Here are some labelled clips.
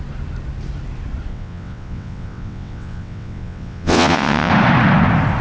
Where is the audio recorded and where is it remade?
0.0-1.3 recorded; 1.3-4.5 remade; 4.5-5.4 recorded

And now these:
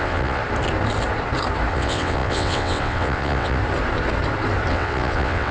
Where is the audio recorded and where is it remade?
0.0-0.4 remade; 0.4-1.7 recorded; 1.7-3.6 remade; 3.6-4.7 recorded; 4.7-5.5 remade

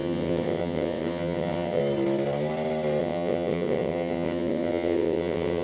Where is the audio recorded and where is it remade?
0.0-1.8 remade; 1.8-3.0 recorded; 3.0-5.6 remade

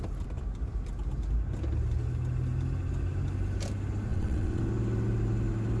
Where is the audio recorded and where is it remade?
0.0-4.1 recorded; 4.1-4.6 remade; 4.6-5.8 recorded

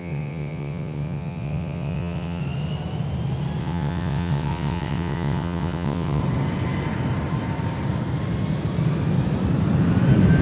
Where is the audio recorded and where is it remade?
0.0-2.4 remade; 2.4-3.6 recorded; 3.6-6.2 remade; 6.2-10.4 recorded